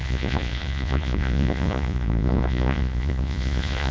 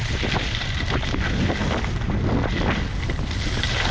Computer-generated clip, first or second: first